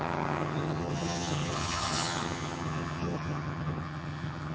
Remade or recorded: remade